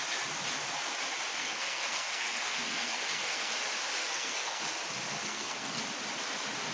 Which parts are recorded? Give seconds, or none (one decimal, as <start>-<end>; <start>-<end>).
0.0-1.4; 3.5-4.0; 4.6-5.2; 5.8-6.7